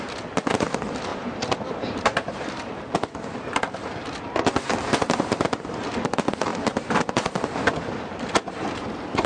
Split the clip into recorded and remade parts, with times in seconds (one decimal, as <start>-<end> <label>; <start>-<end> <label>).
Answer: 0.0-1.1 recorded; 1.1-2.7 remade; 2.7-9.3 recorded

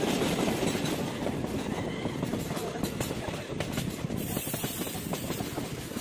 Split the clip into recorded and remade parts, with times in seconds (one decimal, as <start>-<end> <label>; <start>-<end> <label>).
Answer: 0.0-6.0 recorded

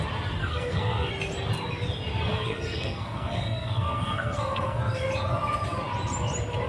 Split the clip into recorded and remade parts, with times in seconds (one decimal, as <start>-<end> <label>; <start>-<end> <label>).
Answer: 0.0-0.4 recorded; 0.4-1.1 remade; 1.1-2.3 recorded; 2.3-4.8 remade; 4.8-6.7 recorded

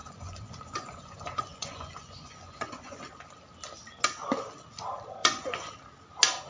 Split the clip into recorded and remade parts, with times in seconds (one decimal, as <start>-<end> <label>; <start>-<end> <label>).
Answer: 0.0-3.0 remade; 3.0-5.2 recorded; 5.2-5.7 remade; 5.7-6.5 recorded

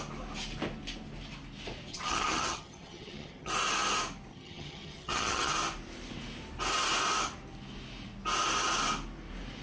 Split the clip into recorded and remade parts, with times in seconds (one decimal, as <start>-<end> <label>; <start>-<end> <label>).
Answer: 0.0-1.9 recorded; 1.9-3.5 remade; 3.5-4.3 recorded; 4.3-5.5 remade; 5.5-9.6 recorded

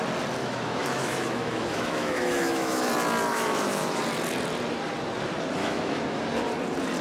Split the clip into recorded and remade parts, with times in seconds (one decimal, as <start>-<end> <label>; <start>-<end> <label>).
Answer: 0.0-0.4 recorded; 0.4-2.9 remade; 2.9-3.3 recorded; 3.3-4.0 remade; 4.0-5.6 recorded; 5.6-6.2 remade; 6.2-7.0 recorded